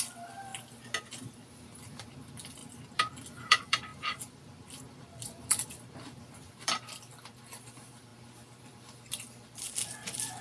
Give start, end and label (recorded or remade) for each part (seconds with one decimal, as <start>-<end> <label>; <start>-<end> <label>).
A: 0.0-0.5 remade; 0.5-1.3 recorded; 1.3-2.6 remade; 2.6-3.5 recorded; 3.5-10.4 remade